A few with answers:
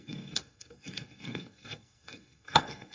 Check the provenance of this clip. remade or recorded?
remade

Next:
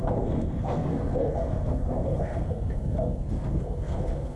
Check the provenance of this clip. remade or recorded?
remade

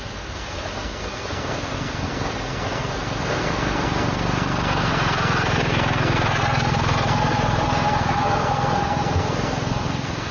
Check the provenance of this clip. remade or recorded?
remade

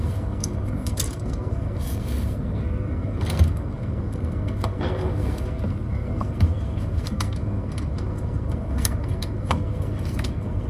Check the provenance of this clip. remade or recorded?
remade